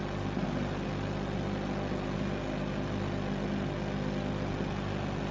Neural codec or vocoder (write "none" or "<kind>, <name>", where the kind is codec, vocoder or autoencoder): none